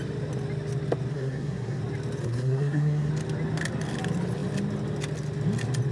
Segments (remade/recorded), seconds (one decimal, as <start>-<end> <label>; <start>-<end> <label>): 0.0-1.1 recorded; 1.1-1.8 remade; 1.8-2.2 recorded; 2.2-3.1 remade; 3.1-5.9 recorded